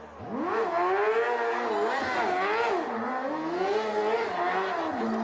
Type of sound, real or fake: real